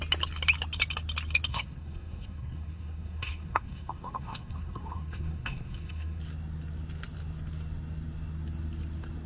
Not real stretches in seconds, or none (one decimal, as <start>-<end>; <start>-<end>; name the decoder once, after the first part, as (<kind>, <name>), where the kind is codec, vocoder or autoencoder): 1.5-6.2 (codec, SNAC)